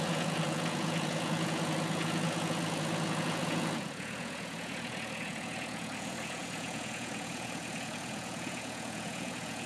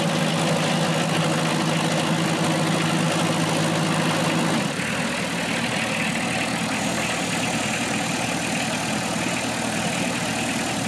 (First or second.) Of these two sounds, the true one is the second